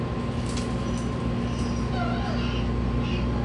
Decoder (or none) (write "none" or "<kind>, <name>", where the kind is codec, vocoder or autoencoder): none